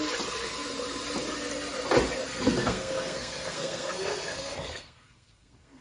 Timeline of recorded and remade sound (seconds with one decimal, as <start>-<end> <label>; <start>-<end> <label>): 0.0-2.3 recorded; 2.3-5.8 remade